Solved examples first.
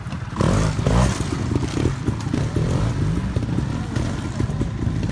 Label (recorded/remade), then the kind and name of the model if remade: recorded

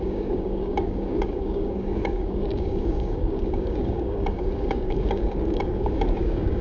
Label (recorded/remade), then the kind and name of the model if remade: remade, codec, DAC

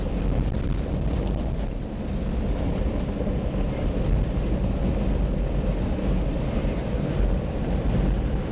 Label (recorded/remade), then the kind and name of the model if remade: recorded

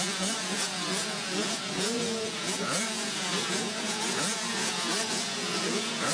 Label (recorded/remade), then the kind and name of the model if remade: remade, vocoder, Vocos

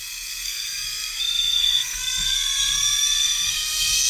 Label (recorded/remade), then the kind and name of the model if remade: remade, codec, SNAC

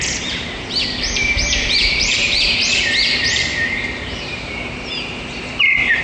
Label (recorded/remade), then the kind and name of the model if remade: remade, vocoder, BigVGAN v2